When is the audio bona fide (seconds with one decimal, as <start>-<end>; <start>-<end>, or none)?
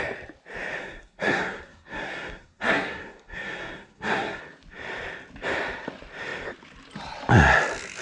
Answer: 0.0-0.8; 4.4-8.0